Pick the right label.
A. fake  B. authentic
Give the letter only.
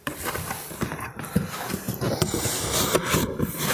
A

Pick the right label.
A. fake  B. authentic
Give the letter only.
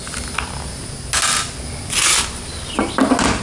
B